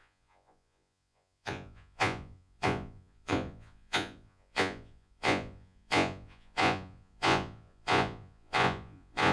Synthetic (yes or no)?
yes